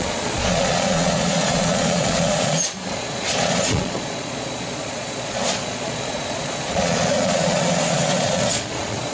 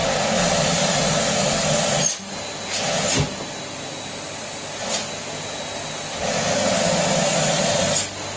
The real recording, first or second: second